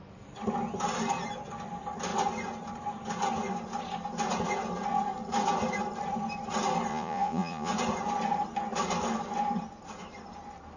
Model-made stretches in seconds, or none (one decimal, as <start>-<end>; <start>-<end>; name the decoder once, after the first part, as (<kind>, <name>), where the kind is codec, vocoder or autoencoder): 6.9-7.7 (vocoder, Vocos)